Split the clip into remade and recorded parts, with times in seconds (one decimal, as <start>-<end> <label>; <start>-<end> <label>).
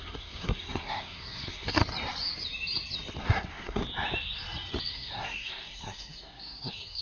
0.0-1.8 remade; 1.8-3.2 recorded; 3.2-3.8 remade; 3.8-4.9 recorded; 4.9-7.0 remade